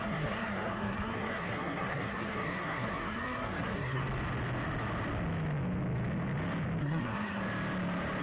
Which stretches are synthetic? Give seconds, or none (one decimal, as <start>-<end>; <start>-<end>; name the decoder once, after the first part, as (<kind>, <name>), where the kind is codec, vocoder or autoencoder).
0.0-4.0 (codec, SNAC); 6.8-7.4